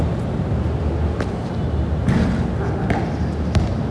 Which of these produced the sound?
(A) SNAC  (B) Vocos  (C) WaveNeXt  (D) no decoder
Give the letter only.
D